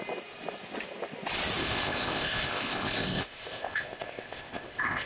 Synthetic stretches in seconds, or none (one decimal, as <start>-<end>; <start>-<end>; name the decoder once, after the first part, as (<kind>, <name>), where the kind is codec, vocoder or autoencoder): 1.6-5.1 (codec, ZipCodec)